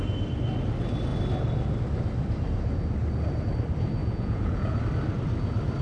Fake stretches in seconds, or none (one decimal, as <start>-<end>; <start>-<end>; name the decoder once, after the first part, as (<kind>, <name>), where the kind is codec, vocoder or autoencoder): 4.0-4.8 (vocoder, Vocos)

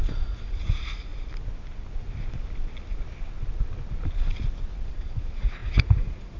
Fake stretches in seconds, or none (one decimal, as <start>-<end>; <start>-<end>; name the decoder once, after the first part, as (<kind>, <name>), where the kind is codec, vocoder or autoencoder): 0.0-1.1 (vocoder, Vocos); 4.9-6.4

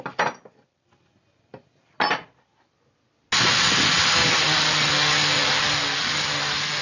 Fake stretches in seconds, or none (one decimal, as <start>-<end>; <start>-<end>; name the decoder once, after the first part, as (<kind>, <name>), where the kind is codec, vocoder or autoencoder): none

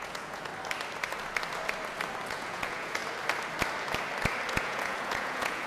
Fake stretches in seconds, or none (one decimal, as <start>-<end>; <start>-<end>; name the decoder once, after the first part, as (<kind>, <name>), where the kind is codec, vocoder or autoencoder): 0.0-0.5 (vocoder, Vocos); 2.3-3.0; 4.6-5.7

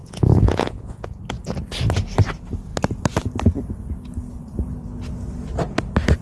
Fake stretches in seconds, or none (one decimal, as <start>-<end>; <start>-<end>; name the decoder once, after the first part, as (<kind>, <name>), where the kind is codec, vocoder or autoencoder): 0.0-1.2 (vocoder, Vocos)

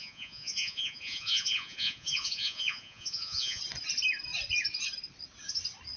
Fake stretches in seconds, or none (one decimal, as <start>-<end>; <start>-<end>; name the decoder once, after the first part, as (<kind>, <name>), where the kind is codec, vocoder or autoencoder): 0.0-3.6 (vocoder, Vocos)